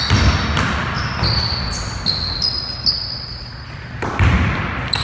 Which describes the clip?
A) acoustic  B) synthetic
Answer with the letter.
A